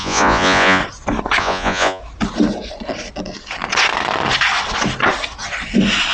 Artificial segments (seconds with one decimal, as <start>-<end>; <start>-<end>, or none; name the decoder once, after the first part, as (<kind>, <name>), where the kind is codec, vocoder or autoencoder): 0.0-0.8 (vocoder, Vocos); 1.4-2.0